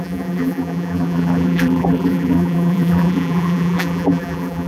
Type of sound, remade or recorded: remade